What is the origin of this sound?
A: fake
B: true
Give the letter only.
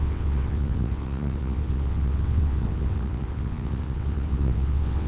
A